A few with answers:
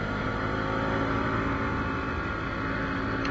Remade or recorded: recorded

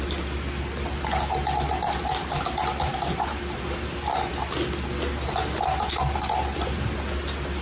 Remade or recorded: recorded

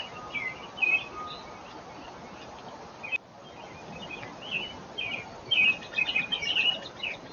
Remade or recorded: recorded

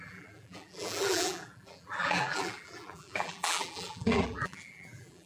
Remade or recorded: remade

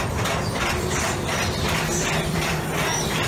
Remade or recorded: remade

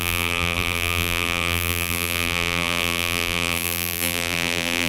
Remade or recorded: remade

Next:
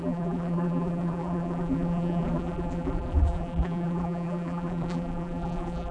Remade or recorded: remade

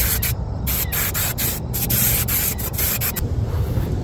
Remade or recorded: recorded